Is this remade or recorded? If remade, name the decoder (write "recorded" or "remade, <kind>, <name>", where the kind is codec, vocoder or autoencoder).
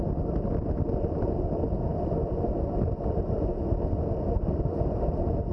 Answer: recorded